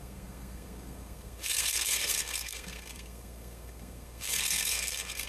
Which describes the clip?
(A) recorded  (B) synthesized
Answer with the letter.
B